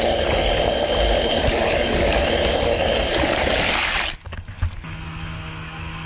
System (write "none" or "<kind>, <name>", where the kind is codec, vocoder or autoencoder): none